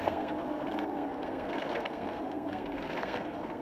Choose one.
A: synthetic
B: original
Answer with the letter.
A